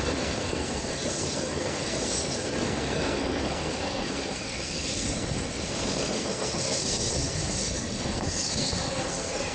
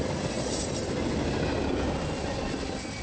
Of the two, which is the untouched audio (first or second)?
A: second